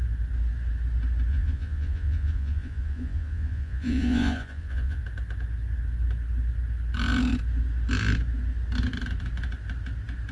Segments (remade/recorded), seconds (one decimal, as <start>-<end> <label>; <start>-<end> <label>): 0.0-1.3 recorded; 1.3-5.0 remade; 5.0-10.3 recorded